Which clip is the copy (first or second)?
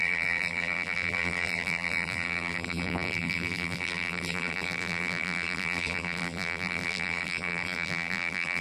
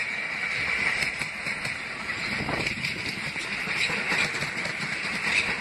first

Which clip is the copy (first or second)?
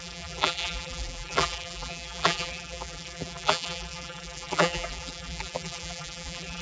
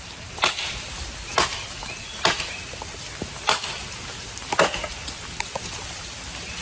first